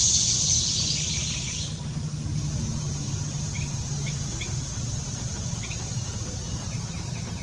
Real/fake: fake